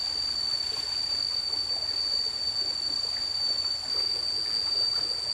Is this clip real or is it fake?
real